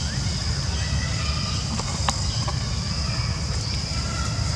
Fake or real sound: real